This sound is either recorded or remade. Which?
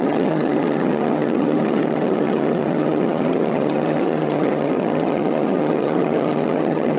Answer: remade